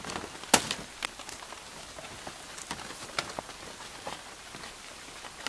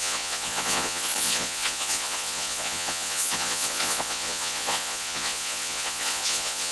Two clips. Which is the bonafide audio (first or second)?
first